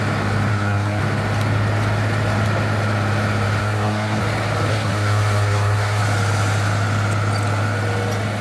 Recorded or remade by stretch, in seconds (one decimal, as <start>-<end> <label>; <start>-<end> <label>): 0.0-0.5 recorded; 0.5-1.0 remade; 1.0-3.6 recorded; 3.6-4.2 remade; 4.2-4.7 recorded; 4.7-6.0 remade; 6.0-8.4 recorded